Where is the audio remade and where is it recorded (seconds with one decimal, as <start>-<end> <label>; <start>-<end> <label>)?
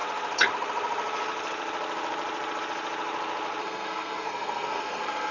0.0-3.6 recorded; 3.6-5.3 remade